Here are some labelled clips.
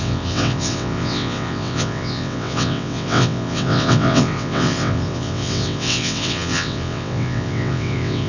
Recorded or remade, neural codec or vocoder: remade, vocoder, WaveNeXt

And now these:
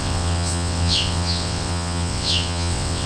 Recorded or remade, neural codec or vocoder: remade, vocoder, WaveNeXt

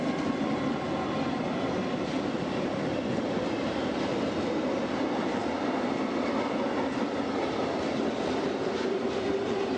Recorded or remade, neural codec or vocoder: recorded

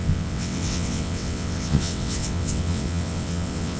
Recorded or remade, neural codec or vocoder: remade, vocoder, WaveNeXt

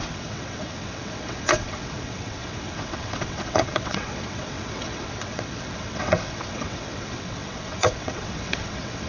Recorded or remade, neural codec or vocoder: remade, vocoder, WaveNeXt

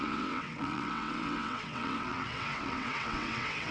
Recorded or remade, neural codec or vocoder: remade, vocoder, WaveNeXt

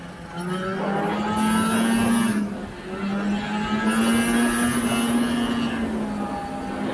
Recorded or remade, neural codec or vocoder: recorded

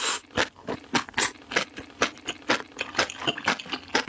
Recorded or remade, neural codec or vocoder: recorded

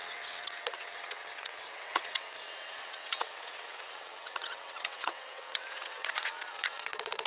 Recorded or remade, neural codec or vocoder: remade, vocoder, WaveNeXt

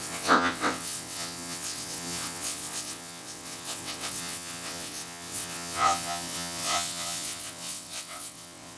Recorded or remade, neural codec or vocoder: remade, vocoder, WaveNeXt